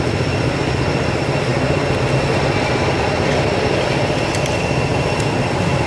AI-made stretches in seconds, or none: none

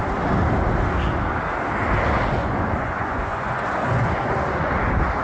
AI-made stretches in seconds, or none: 2.4-4.7

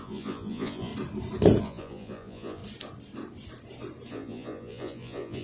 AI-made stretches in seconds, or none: 0.0-0.9; 1.6-2.6; 4.1-5.4

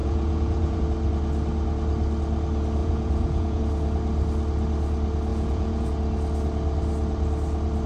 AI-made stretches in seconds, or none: 0.0-0.8; 2.8-3.6; 5.3-5.9

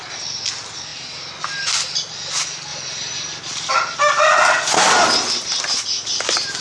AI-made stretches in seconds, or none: none

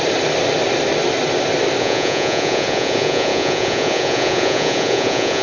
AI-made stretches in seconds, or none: 1.8-5.4

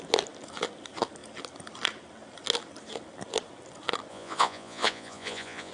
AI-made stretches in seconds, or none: 4.1-5.7

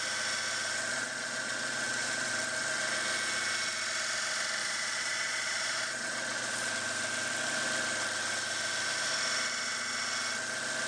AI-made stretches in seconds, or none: 0.9-2.3; 4.6-6.7